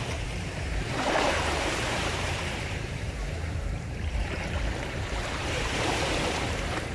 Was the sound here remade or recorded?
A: remade